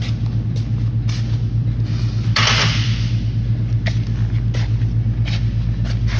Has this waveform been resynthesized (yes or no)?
no